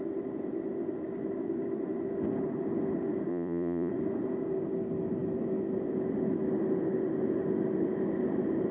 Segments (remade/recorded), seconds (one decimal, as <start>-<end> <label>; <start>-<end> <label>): 0.0-3.3 recorded; 3.3-3.9 remade; 3.9-8.7 recorded